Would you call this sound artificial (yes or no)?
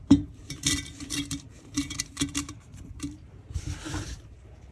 yes